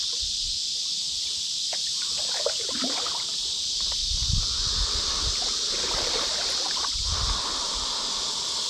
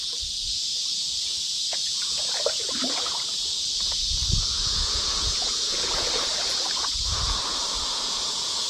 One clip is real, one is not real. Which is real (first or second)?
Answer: first